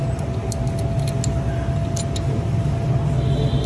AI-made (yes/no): no